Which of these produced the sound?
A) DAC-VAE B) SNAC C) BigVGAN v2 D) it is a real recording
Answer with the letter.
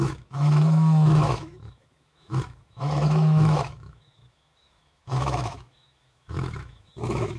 A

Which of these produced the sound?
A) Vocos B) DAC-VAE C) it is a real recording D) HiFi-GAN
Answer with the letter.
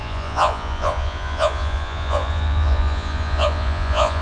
A